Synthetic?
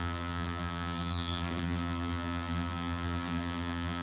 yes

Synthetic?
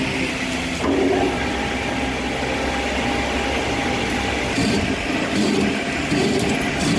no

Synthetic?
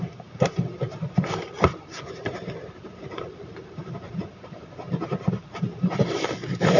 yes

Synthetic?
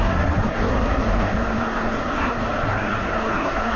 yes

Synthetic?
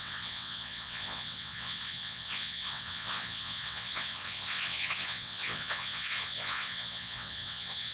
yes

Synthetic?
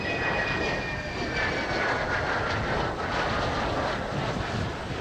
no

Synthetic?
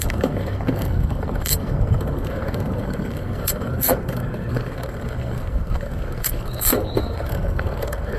yes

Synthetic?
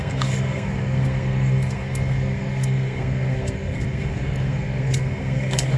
yes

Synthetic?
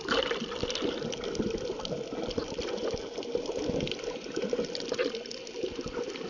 no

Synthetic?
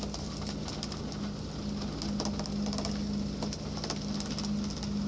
no